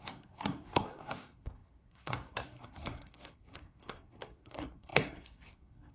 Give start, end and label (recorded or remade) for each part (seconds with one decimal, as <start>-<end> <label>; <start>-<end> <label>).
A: 0.0-5.9 remade